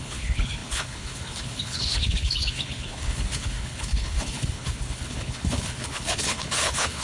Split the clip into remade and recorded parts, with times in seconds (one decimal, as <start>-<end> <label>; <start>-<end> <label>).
0.0-7.0 remade